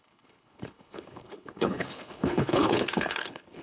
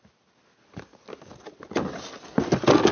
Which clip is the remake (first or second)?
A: first